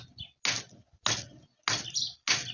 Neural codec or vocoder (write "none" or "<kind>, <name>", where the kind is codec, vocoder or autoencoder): none